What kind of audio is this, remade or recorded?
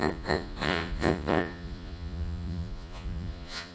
remade